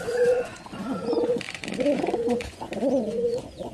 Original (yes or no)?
no